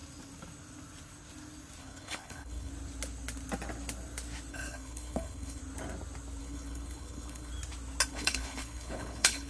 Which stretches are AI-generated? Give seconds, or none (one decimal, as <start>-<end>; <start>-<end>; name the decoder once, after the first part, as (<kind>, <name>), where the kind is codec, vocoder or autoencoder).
1.8-2.7 (codec, HILCodec); 4.5-5.6; 6.4-7.5; 8.1-9.5